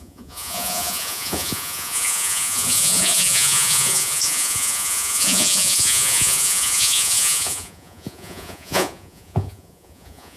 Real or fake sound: fake